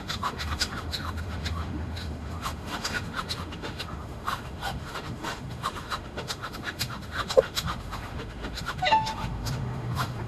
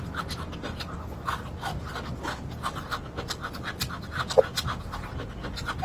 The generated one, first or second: first